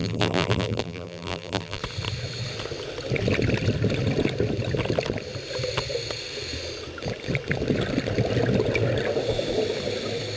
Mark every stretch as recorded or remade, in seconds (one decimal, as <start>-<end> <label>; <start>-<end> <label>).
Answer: 0.0-1.8 remade; 1.8-10.4 recorded